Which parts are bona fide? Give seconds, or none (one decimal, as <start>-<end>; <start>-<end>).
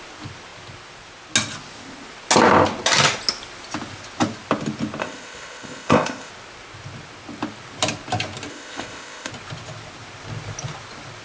0.0-5.0; 6.3-8.5; 9.3-11.2